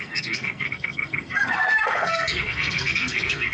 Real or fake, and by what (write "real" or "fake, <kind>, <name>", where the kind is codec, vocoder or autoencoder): fake, codec, SNAC